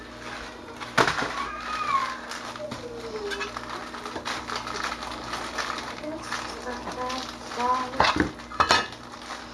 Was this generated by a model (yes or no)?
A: no